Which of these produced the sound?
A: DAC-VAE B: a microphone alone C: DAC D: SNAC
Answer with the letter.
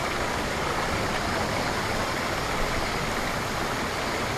B